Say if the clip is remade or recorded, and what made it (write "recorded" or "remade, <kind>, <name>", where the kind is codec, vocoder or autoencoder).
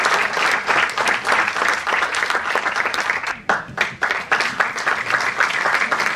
recorded